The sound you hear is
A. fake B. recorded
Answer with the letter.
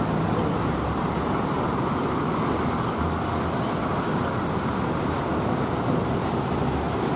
B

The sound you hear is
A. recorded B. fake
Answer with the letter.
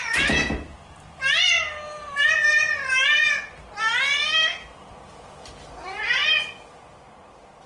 A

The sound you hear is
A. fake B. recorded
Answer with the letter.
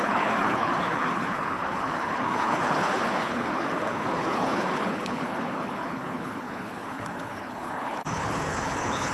A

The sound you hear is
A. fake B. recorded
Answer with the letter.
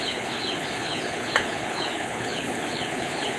A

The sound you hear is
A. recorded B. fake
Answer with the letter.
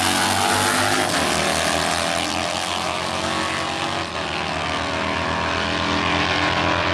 A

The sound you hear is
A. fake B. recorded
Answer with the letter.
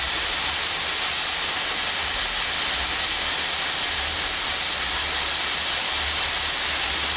B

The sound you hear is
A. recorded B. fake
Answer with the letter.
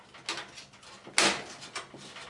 A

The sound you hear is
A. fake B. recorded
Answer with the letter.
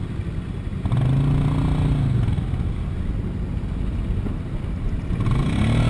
B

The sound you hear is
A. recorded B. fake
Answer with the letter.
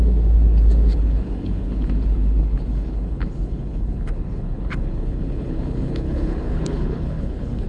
B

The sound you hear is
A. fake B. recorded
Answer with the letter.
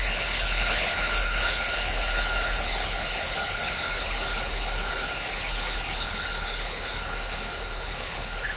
A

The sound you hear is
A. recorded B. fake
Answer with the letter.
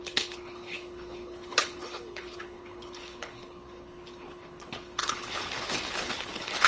B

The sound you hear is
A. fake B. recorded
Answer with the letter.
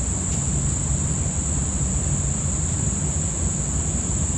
B